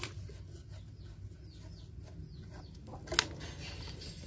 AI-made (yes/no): no